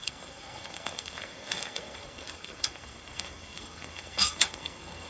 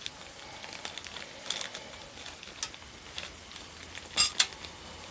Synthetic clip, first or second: first